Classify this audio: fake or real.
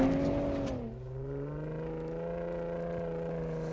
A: real